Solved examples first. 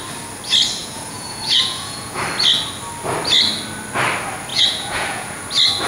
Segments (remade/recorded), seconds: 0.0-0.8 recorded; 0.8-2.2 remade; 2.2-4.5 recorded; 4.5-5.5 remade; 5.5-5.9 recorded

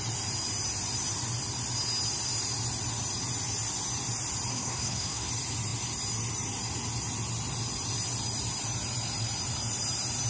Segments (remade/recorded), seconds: 0.0-4.5 recorded; 4.5-5.3 remade; 5.3-10.3 recorded

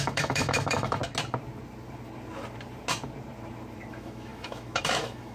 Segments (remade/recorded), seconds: 0.0-1.0 remade; 1.0-3.9 recorded; 3.9-5.3 remade

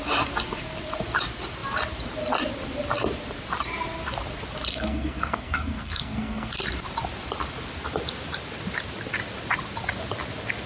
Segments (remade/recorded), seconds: 0.0-4.7 recorded; 4.7-6.5 remade; 6.5-10.7 recorded

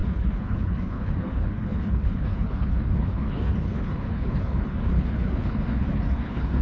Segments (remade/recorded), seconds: 0.0-6.6 remade